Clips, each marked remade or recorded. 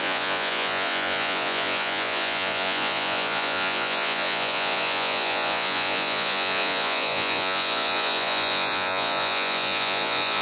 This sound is remade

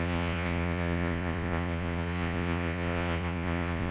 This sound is remade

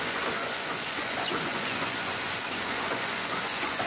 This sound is remade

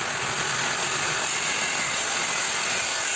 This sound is recorded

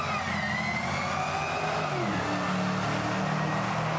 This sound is recorded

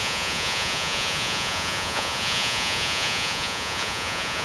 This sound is remade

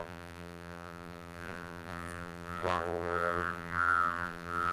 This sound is remade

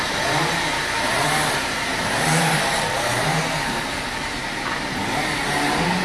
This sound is remade